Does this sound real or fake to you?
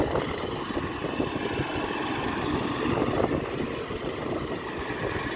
real